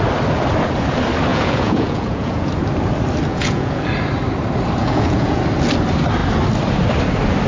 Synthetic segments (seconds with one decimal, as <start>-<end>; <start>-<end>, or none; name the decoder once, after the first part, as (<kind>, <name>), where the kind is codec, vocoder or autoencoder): 1.3-2.5 (vocoder, Vocos); 3.3-3.9; 4.8-5.4

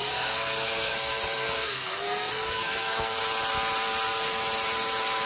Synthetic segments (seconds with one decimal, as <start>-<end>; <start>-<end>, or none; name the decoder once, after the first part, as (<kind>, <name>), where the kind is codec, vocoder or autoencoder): 0.0-3.2 (codec, SNAC)

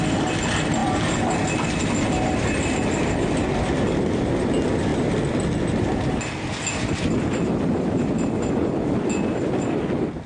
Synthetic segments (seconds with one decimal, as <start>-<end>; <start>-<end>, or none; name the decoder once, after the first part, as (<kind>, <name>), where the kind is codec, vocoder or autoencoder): none

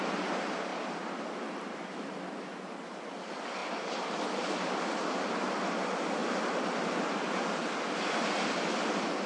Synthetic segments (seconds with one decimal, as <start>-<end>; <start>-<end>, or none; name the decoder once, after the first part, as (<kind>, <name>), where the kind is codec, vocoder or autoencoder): 0.7-1.9 (vocoder, BigVGAN v2); 3.6-4.4; 6.2-9.3

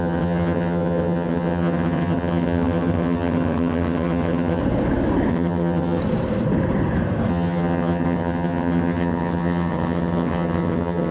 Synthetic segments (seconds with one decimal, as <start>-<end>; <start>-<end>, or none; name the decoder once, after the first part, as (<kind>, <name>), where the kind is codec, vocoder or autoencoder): 0.0-4.6 (vocoder, HiFi-GAN); 5.3-6.0; 7.3-11.1

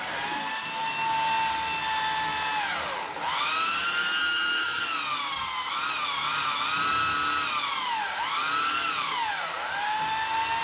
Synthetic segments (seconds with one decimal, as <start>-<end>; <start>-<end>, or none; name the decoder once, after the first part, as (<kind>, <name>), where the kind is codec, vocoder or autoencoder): 4.2-4.8 (autoencoder, DAC-VAE)